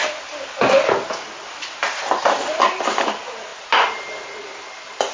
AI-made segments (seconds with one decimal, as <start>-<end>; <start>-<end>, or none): none